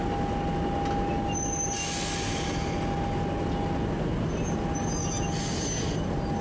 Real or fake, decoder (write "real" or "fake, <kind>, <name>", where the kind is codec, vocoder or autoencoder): real